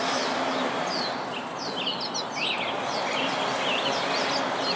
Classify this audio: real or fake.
real